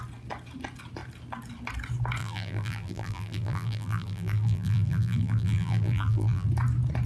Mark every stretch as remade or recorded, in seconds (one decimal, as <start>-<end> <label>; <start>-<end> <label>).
0.0-2.2 recorded; 2.2-6.5 remade; 6.5-7.1 recorded